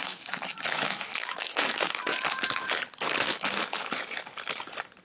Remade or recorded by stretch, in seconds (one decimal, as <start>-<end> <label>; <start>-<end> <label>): 0.0-2.7 remade; 2.7-3.3 recorded; 3.3-3.9 remade; 3.9-5.0 recorded